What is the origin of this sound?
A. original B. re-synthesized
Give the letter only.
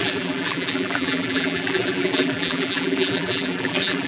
B